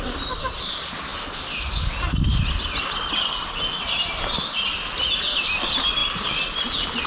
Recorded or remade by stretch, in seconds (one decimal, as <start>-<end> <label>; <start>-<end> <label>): 0.0-7.1 recorded